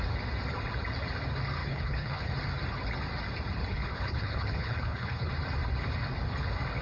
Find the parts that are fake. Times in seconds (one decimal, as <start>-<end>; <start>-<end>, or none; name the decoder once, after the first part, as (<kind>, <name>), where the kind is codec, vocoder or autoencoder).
1.6-2.3 (codec, HILCodec); 3.7-5.3